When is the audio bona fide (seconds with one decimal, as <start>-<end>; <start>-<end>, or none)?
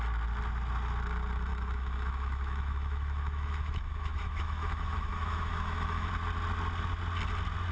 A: 0.0-1.5; 6.1-7.7